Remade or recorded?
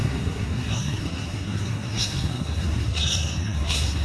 remade